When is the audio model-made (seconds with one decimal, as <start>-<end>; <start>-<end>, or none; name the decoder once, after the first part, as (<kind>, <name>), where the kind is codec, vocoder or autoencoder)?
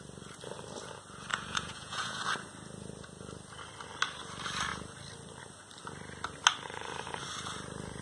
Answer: 1.3-2.2 (vocoder, Vocos)